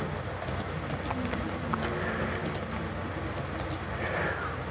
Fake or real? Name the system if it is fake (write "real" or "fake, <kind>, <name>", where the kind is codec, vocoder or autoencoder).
real